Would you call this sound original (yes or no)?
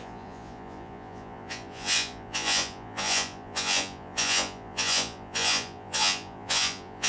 no